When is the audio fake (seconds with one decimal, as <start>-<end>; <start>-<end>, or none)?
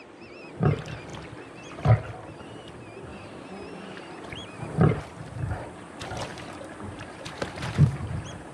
3.1-5.0; 6.3-8.1